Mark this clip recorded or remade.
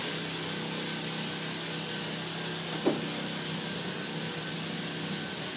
recorded